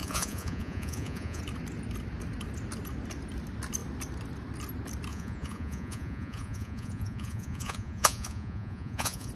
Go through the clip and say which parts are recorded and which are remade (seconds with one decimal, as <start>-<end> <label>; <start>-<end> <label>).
0.0-1.4 remade; 1.4-5.1 recorded; 5.1-9.3 remade